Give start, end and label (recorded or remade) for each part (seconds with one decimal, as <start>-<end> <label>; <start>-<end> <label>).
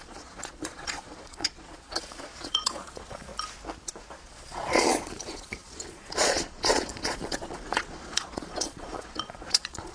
0.0-3.3 remade; 3.3-4.1 recorded; 4.1-9.9 remade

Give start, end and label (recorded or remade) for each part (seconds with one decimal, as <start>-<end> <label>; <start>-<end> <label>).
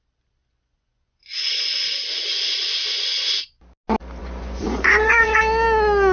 0.0-0.4 recorded; 0.4-3.6 remade; 3.6-4.2 recorded; 4.2-5.4 remade; 5.4-6.1 recorded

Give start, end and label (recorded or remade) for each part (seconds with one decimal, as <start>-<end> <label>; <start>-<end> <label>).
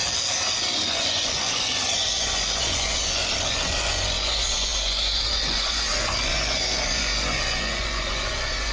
0.0-0.7 recorded; 0.7-8.7 remade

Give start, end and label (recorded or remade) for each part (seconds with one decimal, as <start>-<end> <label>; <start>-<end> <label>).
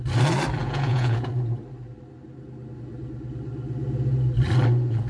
0.0-0.6 recorded; 0.6-1.3 remade; 1.3-5.1 recorded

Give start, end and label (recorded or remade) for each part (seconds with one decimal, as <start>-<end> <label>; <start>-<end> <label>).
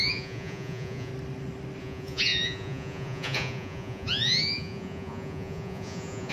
0.0-1.1 remade; 1.1-1.8 recorded; 1.8-6.3 remade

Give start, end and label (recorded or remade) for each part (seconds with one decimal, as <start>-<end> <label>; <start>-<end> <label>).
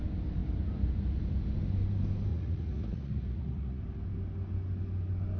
0.0-2.3 recorded; 2.3-3.8 remade; 3.8-5.4 recorded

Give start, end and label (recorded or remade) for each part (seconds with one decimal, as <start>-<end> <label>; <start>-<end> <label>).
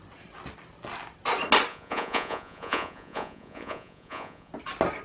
0.0-1.7 recorded; 1.7-4.5 remade; 4.5-5.0 recorded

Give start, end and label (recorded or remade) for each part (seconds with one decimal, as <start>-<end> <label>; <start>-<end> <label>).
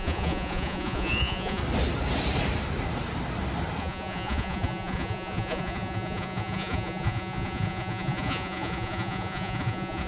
0.0-1.6 remade; 1.6-3.8 recorded; 3.8-10.1 remade